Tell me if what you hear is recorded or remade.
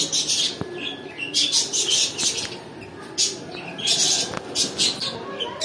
recorded